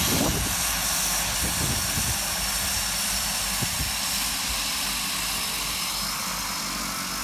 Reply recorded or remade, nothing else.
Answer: recorded